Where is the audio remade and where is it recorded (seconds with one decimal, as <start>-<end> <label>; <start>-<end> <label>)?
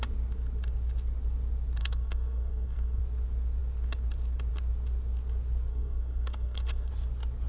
0.0-1.8 recorded; 1.8-3.0 remade; 3.0-5.7 recorded; 5.7-6.9 remade; 6.9-7.5 recorded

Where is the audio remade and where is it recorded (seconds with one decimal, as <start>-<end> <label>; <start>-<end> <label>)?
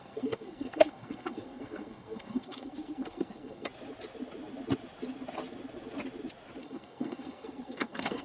0.0-3.7 remade; 3.7-6.6 recorded; 6.6-8.2 remade